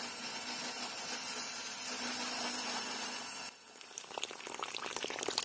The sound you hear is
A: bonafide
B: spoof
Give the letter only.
A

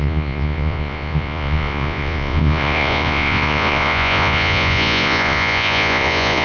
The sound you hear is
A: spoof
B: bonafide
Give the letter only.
A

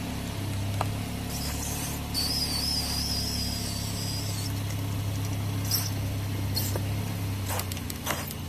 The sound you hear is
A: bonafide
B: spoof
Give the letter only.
A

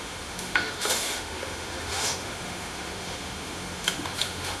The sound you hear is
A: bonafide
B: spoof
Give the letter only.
B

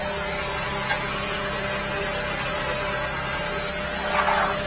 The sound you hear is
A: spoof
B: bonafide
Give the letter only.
B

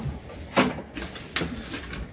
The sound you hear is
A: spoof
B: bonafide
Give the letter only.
B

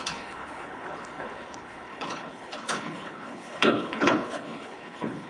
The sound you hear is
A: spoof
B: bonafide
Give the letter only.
A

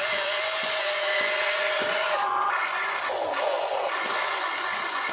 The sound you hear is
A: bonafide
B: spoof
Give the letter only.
B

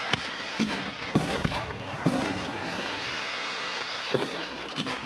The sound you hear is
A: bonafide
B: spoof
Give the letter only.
B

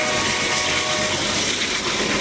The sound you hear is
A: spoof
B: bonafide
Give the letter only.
B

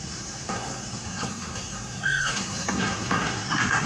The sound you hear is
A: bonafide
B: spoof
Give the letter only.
B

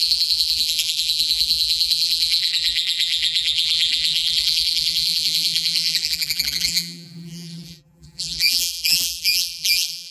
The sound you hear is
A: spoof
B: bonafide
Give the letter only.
A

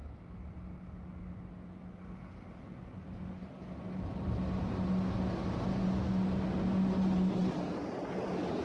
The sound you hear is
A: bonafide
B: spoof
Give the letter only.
A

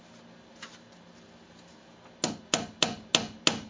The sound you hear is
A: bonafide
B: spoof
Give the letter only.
A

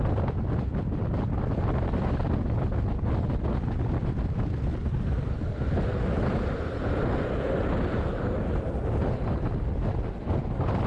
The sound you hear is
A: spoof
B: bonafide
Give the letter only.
B